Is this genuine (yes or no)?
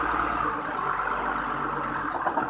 yes